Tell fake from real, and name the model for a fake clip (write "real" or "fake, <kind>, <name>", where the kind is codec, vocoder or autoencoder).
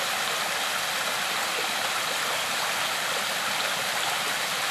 real